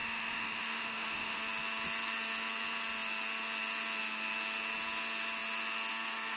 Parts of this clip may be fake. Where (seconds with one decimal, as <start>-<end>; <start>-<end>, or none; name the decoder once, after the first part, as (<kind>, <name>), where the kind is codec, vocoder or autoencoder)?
0.0-1.4 (autoencoder, DAC-VAE)